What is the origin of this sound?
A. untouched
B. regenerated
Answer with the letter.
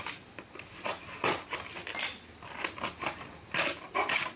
A